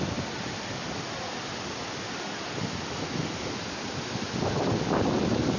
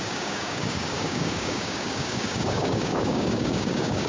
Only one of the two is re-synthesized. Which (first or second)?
second